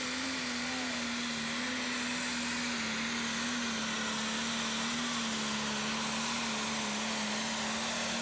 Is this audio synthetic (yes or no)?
no